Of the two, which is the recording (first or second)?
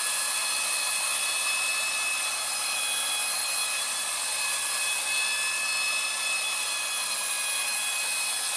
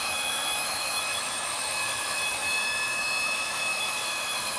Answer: first